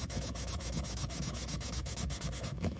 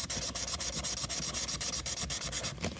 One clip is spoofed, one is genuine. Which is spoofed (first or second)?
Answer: first